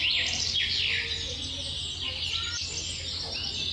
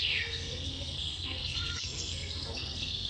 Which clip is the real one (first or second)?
first